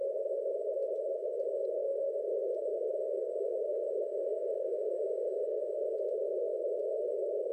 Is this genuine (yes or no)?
no